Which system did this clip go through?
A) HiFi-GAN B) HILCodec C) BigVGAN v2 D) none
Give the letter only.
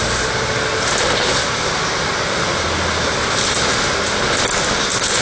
D